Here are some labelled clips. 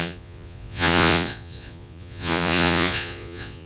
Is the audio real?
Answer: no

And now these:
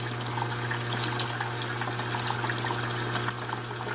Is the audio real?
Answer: yes